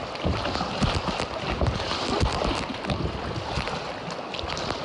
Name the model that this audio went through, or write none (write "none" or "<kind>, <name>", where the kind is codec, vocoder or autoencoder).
none